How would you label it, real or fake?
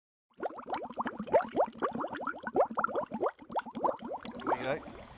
real